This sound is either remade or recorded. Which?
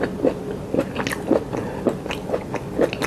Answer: recorded